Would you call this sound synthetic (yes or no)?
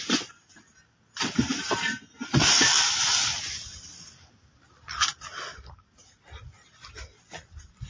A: no